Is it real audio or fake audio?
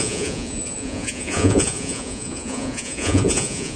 fake